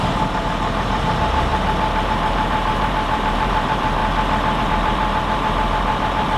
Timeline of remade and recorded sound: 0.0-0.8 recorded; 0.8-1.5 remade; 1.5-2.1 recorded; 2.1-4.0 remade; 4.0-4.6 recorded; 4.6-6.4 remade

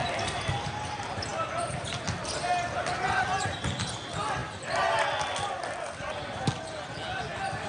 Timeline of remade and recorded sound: 0.0-7.7 recorded

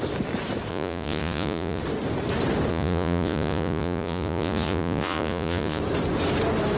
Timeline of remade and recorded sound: 0.0-0.7 recorded; 0.7-1.8 remade; 1.8-2.7 recorded; 2.7-5.8 remade; 5.8-6.8 recorded

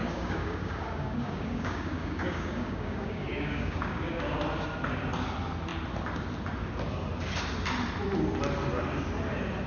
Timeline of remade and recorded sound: 0.0-4.2 remade; 4.2-9.7 recorded

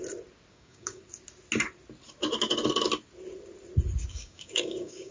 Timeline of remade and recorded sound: 0.0-0.5 recorded; 0.5-1.0 remade; 1.0-4.1 recorded; 4.1-5.1 remade

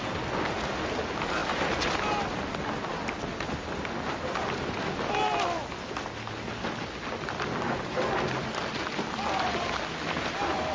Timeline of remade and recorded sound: 0.0-10.7 recorded